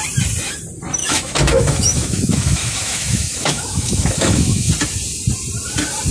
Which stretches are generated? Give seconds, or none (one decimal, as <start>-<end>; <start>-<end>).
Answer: 1.0-4.7